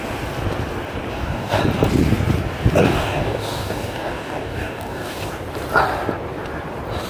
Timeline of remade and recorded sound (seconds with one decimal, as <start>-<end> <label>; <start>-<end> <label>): 0.0-1.1 recorded; 1.1-1.6 remade; 1.6-2.8 recorded; 2.8-5.3 remade; 5.3-7.1 recorded